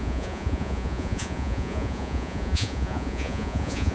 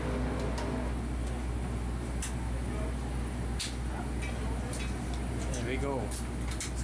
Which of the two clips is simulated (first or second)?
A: first